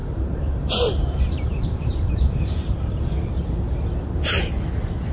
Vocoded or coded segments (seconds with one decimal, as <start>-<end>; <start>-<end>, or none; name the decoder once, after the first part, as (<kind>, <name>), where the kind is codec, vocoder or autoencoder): 0.0-3.1 (vocoder, BigVGAN v2)